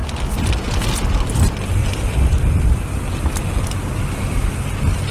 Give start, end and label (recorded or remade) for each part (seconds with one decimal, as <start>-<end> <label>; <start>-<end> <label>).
0.0-0.8 remade; 0.8-1.8 recorded; 1.8-2.8 remade; 2.8-5.1 recorded